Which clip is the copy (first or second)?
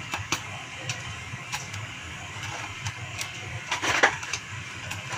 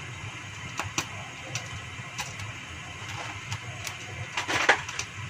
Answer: first